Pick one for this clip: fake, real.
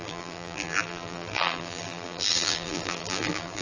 fake